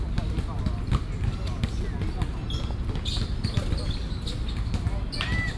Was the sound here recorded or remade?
recorded